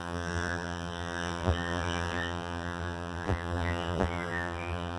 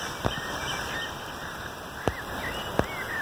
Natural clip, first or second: second